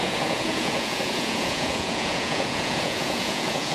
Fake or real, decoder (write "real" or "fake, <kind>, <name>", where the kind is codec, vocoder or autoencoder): fake, vocoder, Vocos